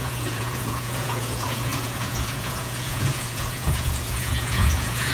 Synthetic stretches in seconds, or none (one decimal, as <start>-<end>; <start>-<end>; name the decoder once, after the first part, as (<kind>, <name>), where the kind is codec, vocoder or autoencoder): 0.0-5.1 (vocoder, Vocos)